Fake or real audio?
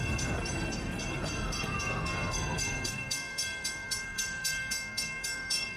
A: fake